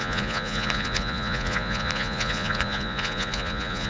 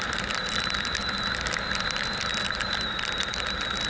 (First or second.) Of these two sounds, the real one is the second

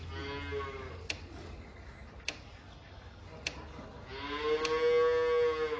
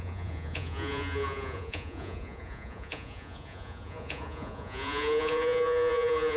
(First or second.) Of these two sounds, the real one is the first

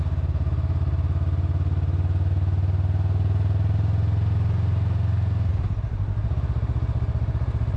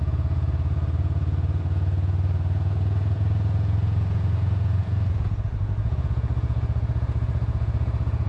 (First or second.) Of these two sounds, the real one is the first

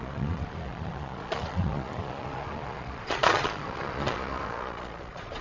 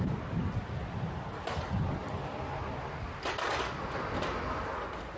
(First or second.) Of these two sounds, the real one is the second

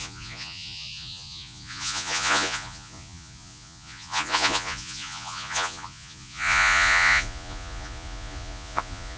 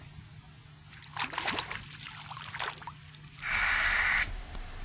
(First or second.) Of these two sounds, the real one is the second